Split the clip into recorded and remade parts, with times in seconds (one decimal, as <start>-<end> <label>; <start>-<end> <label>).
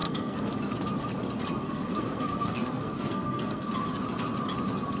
0.0-0.5 remade; 0.5-1.6 recorded; 1.6-3.7 remade; 3.7-5.0 recorded